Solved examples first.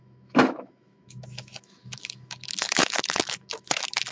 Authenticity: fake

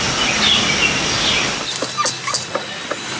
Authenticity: real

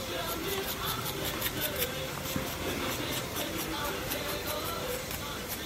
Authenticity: real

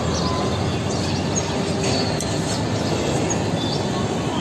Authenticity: real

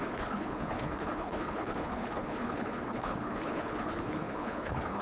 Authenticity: fake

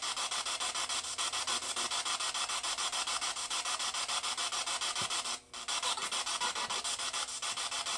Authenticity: real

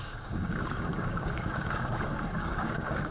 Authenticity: fake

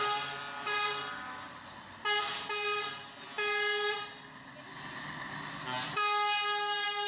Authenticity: real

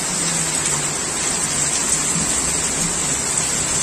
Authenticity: real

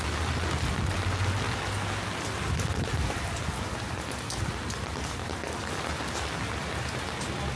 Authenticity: real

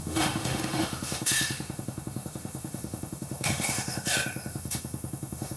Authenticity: fake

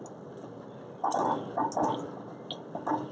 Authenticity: real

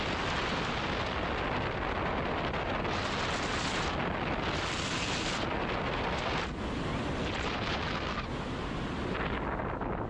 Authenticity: real